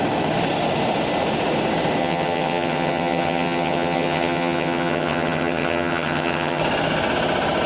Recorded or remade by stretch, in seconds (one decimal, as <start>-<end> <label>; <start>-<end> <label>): 0.0-2.0 recorded; 2.0-6.6 remade; 6.6-7.7 recorded